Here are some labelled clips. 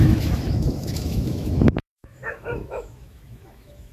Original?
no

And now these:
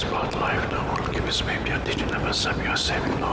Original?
yes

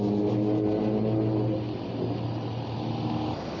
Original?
yes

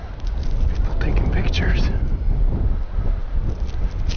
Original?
yes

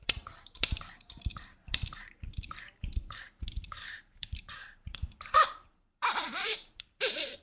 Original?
no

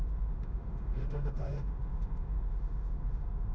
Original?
no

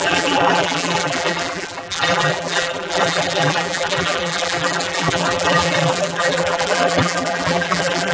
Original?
no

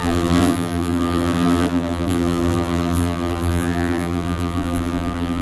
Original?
no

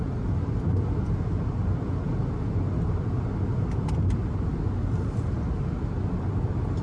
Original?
yes